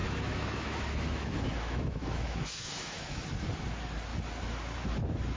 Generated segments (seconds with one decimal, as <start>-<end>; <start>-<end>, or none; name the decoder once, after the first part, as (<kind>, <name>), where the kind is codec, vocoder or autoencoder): 0.0-3.2 (autoencoder, DAC-VAE)